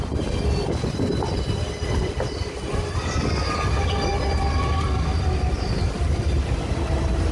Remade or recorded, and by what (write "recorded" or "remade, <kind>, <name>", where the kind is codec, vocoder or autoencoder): recorded